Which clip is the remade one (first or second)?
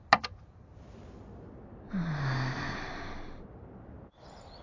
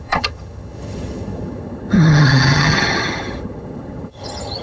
second